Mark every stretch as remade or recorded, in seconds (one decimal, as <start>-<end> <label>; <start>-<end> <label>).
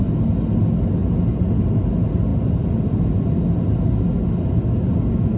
0.0-5.4 recorded